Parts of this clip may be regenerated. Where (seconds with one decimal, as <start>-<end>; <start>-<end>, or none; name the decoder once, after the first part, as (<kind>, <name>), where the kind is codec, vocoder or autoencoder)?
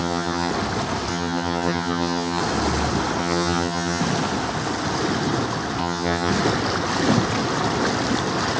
0.0-0.5 (vocoder, HiFi-GAN); 1.1-2.4; 3.2-4.0; 5.8-6.3